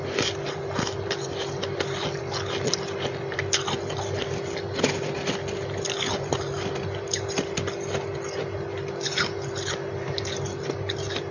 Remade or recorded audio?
recorded